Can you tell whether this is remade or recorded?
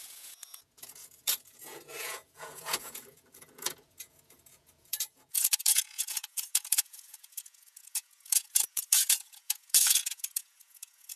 remade